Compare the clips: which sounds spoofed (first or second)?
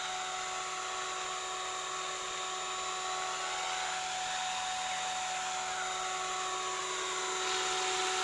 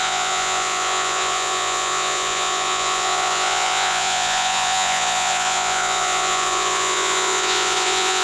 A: second